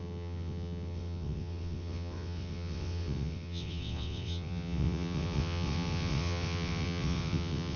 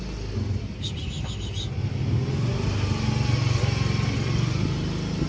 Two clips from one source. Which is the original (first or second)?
second